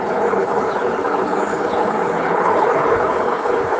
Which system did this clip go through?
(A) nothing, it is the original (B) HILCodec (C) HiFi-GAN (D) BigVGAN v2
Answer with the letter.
B